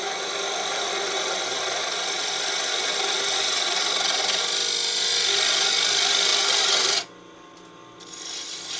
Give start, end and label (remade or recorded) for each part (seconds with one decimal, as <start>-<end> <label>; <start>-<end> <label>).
0.0-8.8 recorded